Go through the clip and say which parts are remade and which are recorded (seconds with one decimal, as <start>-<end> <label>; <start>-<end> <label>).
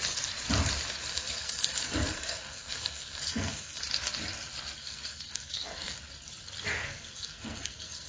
0.0-1.1 recorded; 1.1-3.8 remade; 3.8-4.8 recorded; 4.8-6.0 remade; 6.0-6.8 recorded; 6.8-8.1 remade